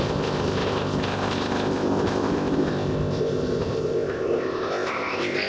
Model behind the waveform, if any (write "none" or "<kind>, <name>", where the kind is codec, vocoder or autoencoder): codec, ZipCodec